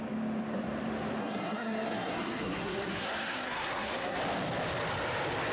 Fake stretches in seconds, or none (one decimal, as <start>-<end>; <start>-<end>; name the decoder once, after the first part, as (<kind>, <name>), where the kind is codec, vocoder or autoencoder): 1.2-4.2 (codec, SNAC)